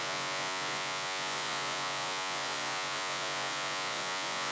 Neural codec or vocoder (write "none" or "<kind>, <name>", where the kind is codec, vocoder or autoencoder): vocoder, Vocos